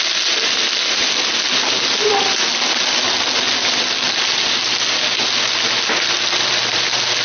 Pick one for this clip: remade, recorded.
recorded